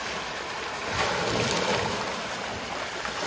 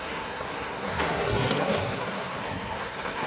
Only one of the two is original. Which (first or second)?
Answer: first